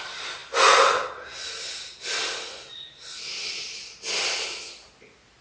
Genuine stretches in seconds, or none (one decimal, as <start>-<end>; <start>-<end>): 0.0-5.4